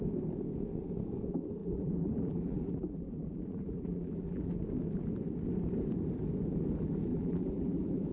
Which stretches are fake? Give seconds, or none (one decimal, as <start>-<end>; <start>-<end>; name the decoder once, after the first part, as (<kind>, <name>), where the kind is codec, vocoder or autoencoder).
1.6-4.5 (vocoder, BigVGAN v2); 7.1-8.1